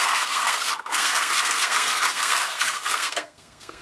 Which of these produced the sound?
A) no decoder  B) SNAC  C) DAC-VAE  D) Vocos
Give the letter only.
B